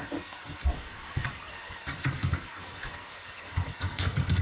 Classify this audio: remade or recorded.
remade